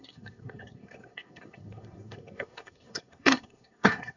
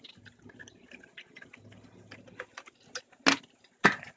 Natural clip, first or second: second